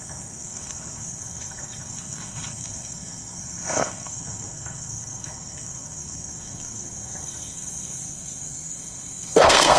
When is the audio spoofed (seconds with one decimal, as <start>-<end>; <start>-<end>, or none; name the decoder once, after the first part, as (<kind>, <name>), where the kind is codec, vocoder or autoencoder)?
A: 0.0-9.8 (codec, SNAC)